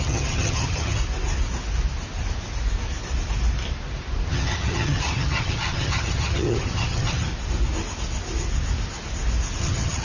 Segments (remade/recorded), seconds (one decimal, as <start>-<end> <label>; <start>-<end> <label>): 0.0-1.0 remade; 1.0-4.3 recorded; 4.3-7.3 remade; 7.3-9.6 recorded; 9.6-10.0 remade